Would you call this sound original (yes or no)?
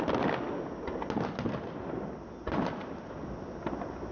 yes